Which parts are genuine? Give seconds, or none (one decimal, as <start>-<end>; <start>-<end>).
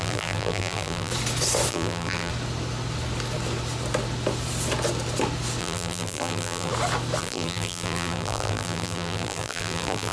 1.1-1.7; 2.3-5.6; 6.7-7.2